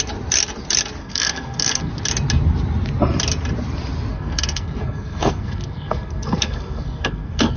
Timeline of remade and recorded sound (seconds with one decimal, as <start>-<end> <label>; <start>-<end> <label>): 0.0-1.0 recorded; 1.0-1.9 remade; 1.9-4.1 recorded; 4.1-7.6 remade